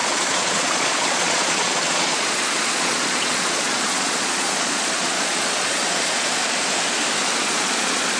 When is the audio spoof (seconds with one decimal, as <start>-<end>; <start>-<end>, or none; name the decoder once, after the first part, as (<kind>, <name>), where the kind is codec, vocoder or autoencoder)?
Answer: 0.0-6.4 (vocoder, Vocos); 7.4-8.2